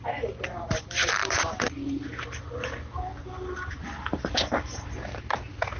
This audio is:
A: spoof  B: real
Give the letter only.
B